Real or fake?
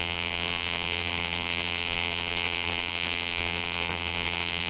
fake